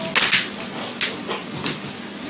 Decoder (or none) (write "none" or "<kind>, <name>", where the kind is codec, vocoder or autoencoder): none